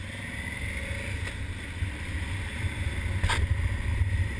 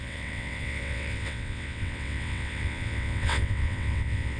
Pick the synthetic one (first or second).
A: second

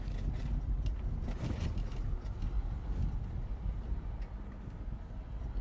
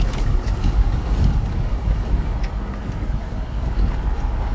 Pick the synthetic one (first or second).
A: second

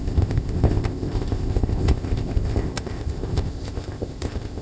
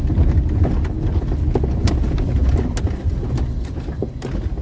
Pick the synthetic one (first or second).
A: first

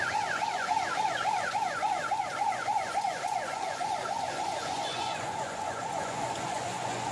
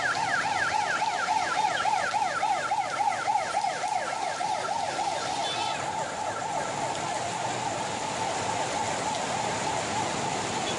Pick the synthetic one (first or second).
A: first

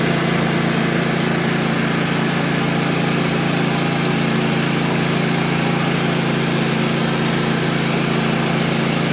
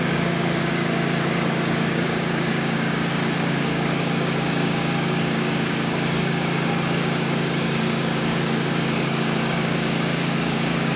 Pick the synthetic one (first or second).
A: second